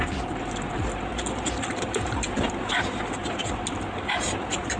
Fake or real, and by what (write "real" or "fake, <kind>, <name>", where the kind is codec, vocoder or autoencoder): real